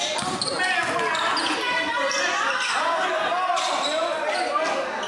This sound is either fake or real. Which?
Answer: real